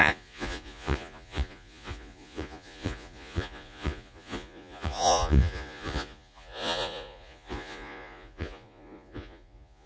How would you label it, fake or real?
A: fake